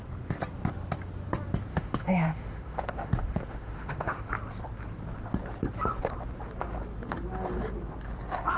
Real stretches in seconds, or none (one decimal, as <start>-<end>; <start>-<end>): 0.0-1.7; 4.3-8.6